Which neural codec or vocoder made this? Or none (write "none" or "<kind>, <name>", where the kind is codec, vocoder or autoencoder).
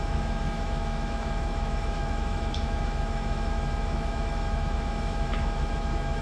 autoencoder, DAC-VAE